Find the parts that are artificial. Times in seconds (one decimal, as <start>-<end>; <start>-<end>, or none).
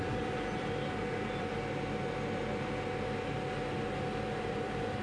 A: 0.0-1.5; 4.3-5.0